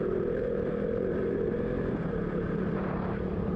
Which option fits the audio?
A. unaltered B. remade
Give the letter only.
B